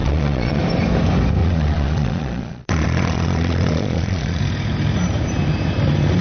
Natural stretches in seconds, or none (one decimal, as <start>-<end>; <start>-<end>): 0.6-1.4; 4.4-6.2